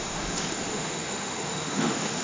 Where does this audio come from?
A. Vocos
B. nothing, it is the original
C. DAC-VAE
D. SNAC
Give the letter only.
C